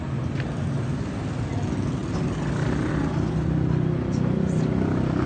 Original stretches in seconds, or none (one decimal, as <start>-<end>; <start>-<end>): 0.0-5.3